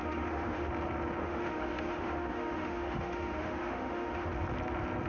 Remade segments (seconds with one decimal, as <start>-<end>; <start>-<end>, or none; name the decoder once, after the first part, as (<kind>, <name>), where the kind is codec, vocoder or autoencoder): 0.0-0.7 (autoencoder, DAC-VAE); 1.2-4.3